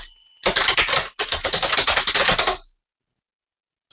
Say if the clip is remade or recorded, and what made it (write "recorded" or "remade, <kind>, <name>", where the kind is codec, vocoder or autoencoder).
recorded